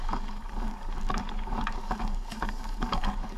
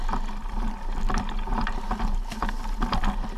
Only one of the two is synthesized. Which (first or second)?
first